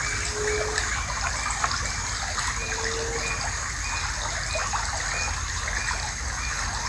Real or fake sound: real